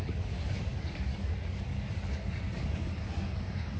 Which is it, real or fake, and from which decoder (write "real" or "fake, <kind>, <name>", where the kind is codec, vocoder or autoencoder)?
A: fake, codec, DAC